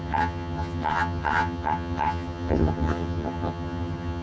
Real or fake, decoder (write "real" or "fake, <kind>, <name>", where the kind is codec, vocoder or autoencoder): fake, vocoder, HiFi-GAN